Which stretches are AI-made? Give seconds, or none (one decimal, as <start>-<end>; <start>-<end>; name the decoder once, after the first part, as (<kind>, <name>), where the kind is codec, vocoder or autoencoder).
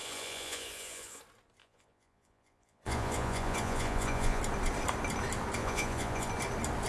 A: 0.0-1.2 (vocoder, Vocos); 1.6-4.4; 5.6-6.3